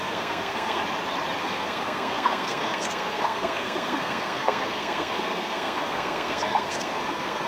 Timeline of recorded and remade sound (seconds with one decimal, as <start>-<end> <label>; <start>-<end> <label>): 0.0-0.8 remade; 0.8-1.4 recorded; 1.4-7.5 remade